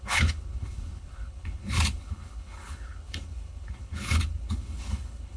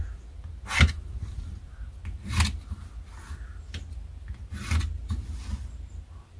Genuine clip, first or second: second